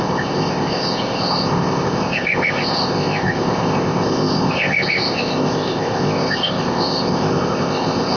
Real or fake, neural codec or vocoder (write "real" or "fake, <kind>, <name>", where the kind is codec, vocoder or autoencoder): fake, codec, ZipCodec